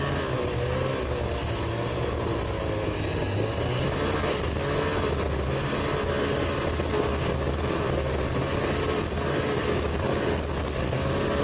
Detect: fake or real real